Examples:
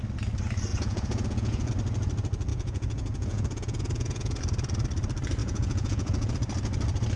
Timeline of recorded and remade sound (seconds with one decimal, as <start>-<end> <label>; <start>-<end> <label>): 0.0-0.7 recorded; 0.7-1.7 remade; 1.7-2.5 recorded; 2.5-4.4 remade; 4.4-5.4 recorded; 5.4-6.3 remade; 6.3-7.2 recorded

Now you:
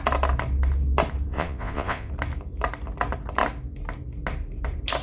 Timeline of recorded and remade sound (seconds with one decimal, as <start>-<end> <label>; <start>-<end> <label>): 0.0-1.3 recorded; 1.3-2.1 remade; 2.1-5.0 recorded

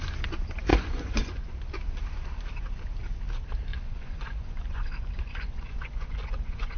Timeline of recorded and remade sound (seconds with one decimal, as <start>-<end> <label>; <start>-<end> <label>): 0.0-0.7 recorded; 0.7-1.5 remade; 1.5-3.7 recorded; 3.7-6.8 remade